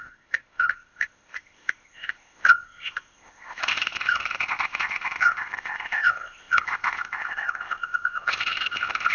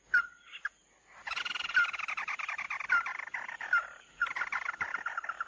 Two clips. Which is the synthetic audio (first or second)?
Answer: first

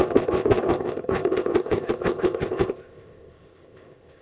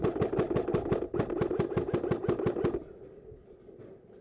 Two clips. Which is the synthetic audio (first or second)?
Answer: first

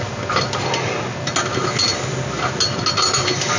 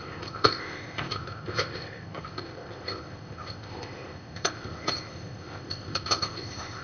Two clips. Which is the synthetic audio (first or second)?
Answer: second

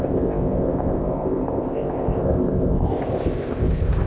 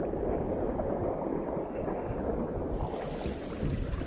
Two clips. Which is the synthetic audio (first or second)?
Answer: first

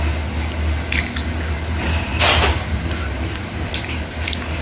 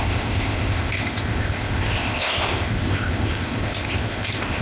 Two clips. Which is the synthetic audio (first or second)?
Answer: second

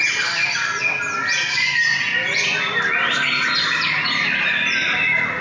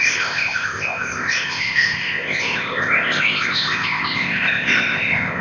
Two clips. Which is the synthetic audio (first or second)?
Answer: second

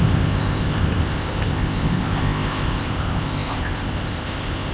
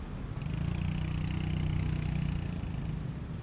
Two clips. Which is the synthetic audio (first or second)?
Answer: first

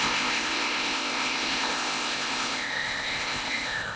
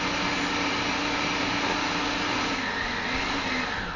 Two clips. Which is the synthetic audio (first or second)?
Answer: first